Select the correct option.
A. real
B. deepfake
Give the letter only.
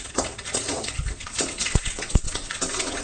B